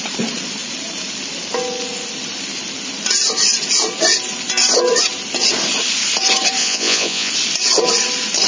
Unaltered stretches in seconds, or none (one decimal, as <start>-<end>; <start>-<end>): 0.0-6.6; 7.3-8.5